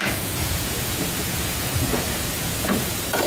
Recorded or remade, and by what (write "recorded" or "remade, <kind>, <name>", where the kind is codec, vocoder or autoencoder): remade, vocoder, Vocos